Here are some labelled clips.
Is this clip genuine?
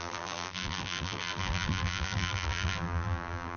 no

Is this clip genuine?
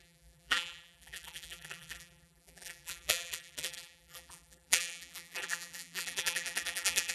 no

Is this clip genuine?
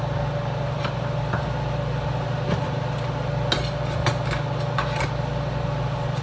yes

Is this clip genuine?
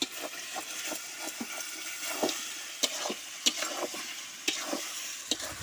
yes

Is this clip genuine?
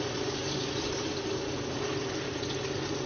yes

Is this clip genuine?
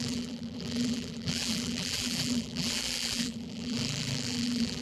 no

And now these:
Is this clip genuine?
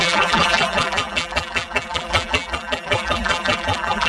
no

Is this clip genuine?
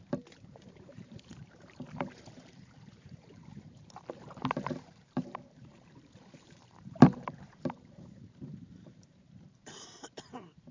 no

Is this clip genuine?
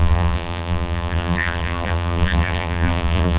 no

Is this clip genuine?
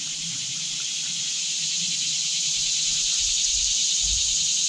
no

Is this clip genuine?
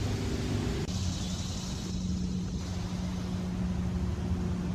yes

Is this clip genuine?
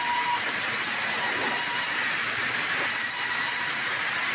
no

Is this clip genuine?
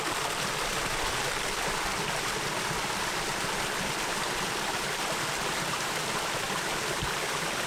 no